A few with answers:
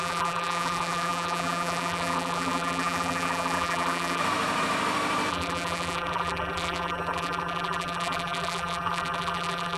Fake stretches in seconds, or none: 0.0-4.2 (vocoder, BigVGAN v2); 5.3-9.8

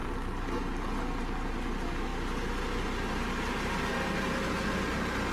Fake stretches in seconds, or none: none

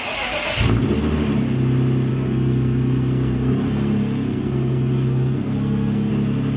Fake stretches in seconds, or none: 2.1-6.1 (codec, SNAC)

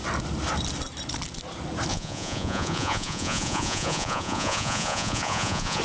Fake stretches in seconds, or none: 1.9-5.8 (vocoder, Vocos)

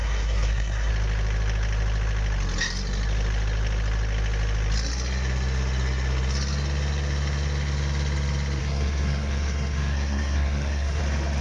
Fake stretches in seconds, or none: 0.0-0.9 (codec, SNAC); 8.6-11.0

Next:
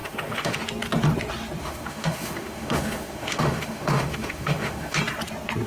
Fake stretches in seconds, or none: 0.0-0.6 (autoencoder, DAC-VAE); 1.6-5.0